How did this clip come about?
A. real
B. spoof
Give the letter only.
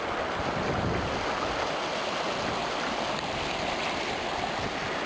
A